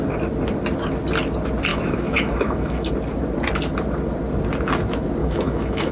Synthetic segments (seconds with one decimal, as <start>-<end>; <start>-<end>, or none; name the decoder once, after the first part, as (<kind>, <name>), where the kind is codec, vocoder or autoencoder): 1.7-2.9 (autoencoder, DAC-VAE); 5.2-5.9